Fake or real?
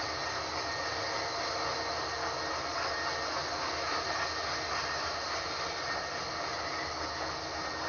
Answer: real